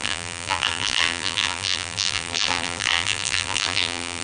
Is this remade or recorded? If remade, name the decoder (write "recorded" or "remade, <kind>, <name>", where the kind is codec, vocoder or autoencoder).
remade, vocoder, BigVGAN v2